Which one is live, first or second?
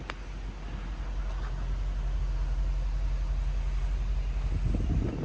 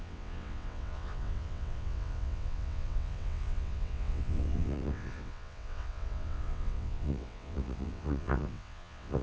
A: first